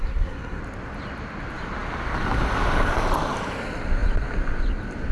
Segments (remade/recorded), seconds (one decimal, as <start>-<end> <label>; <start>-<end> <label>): 0.0-0.6 remade; 0.6-5.1 recorded